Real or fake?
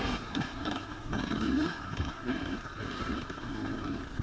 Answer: fake